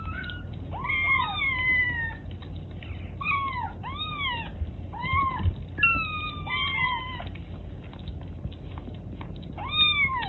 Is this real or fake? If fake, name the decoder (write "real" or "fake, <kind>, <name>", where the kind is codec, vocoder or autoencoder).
real